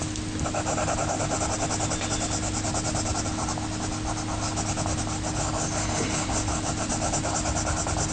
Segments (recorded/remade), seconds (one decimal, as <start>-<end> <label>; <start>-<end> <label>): 0.0-8.1 recorded